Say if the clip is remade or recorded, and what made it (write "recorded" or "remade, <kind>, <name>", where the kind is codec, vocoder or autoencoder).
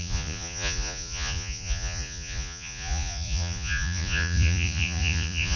remade, vocoder, Vocos